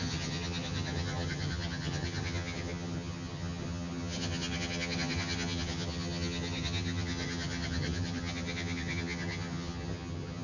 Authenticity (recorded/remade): remade